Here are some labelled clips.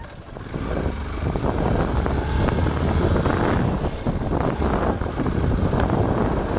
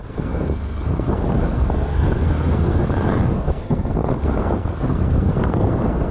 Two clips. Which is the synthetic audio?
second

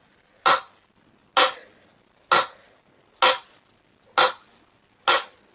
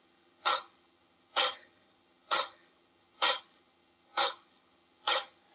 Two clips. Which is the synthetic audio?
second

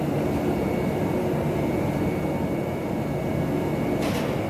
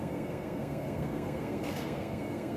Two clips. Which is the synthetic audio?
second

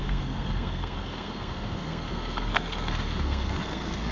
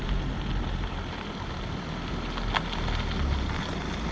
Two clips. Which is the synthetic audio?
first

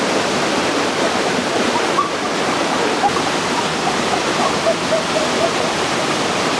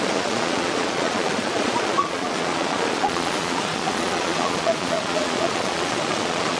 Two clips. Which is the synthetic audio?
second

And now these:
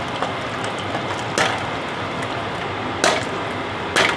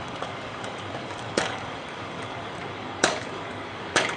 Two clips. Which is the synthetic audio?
second